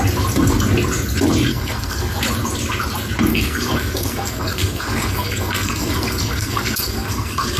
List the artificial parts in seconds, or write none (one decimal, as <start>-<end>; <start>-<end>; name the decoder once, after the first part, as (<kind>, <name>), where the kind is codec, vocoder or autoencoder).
1.5-2.2 (codec, SNAC); 3.3-7.6

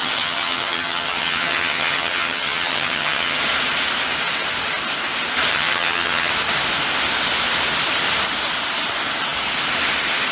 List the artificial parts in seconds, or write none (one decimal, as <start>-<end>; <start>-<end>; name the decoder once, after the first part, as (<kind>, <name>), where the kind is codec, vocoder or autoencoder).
0.0-3.4 (vocoder, HiFi-GAN); 5.5-6.3

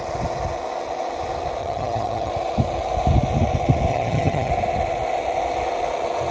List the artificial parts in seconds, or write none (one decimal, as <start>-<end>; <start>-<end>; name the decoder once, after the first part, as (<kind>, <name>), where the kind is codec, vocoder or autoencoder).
1.6-2.3 (vocoder, HiFi-GAN); 3.9-4.5

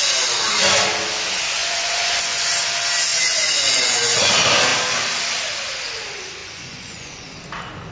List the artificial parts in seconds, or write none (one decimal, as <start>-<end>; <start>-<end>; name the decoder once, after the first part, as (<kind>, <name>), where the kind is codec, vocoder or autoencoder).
1.6-2.5 (vocoder, Vocos); 3.1-4.3; 6.4-7.3

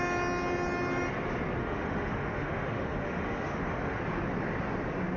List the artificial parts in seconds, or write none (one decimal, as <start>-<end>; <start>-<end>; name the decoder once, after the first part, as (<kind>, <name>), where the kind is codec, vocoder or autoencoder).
1.6-4.0 (autoencoder, DAC-VAE)

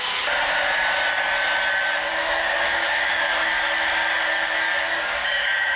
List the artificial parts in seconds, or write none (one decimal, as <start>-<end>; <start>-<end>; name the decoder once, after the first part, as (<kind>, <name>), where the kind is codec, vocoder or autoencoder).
2.1-5.8 (codec, DAC)

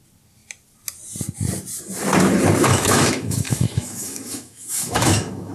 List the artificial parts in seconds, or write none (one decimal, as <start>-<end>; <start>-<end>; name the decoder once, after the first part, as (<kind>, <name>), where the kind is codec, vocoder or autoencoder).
2.6-5.5 (autoencoder, DAC-VAE)